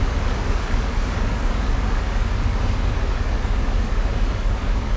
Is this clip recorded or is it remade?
remade